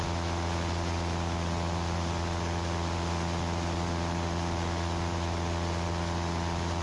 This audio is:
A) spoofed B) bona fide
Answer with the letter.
B